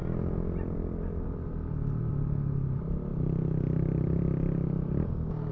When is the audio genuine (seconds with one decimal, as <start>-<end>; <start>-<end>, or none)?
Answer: 0.0-5.5